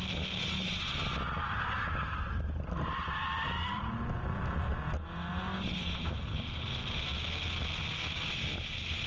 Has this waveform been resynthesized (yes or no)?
no